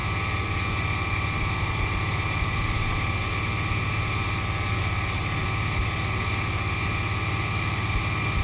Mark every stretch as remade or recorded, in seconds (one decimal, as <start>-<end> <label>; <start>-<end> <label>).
0.0-8.4 recorded